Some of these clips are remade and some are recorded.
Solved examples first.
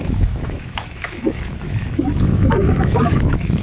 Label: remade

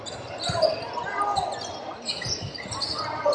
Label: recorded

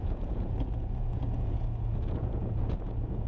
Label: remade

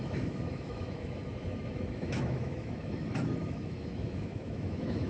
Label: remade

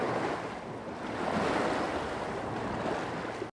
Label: recorded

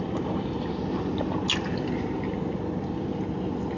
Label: recorded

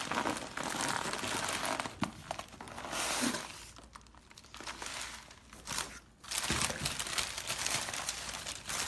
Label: recorded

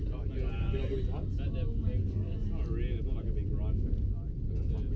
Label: recorded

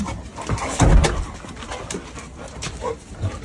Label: recorded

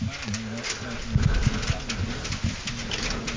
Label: recorded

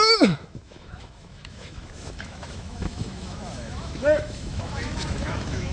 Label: remade